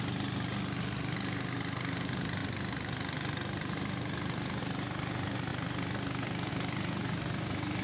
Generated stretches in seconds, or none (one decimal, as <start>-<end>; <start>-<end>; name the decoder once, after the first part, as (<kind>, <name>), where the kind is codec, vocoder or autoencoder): 2.4-4.6 (vocoder, BigVGAN v2); 5.5-6.5

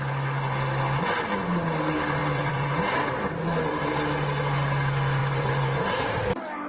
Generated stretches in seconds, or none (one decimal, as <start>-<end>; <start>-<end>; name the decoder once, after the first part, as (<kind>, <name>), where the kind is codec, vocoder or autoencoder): 2.2-3.9 (vocoder, BigVGAN v2); 5.2-6.2

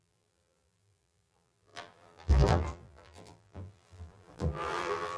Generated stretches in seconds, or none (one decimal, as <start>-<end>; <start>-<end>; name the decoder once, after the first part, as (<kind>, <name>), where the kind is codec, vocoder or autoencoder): 0.0-5.2 (vocoder, BigVGAN v2)

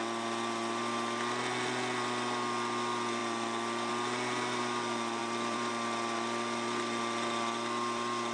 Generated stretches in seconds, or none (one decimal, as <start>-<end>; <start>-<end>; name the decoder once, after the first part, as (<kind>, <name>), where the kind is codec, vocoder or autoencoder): 3.2-3.9 (vocoder, BigVGAN v2); 5.2-5.7

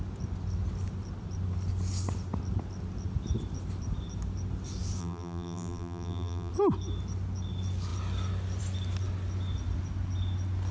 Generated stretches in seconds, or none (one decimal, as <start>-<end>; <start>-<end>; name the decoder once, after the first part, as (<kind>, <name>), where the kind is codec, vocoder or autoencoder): 5.0-6.5 (vocoder, BigVGAN v2)

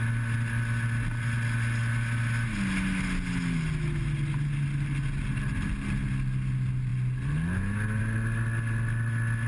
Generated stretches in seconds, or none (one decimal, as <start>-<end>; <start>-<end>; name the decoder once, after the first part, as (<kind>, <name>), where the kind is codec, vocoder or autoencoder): none